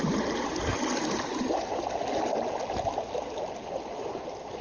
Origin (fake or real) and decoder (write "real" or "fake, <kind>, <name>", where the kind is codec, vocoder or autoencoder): real